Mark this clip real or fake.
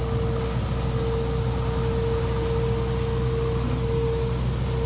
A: real